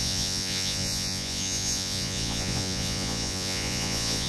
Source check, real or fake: fake